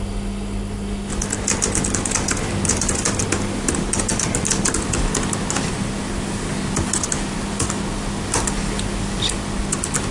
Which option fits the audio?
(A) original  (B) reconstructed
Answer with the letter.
A